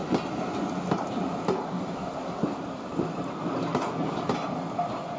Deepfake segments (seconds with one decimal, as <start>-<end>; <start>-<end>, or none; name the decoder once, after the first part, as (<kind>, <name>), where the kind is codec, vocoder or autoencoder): 1.7-2.1 (codec, DAC)